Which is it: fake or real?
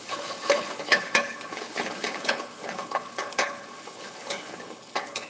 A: fake